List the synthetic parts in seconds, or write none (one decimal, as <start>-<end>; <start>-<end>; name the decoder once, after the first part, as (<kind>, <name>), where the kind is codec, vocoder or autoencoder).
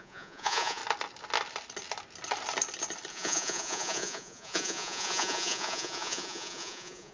0.0-0.8 (vocoder, Vocos); 3.1-7.1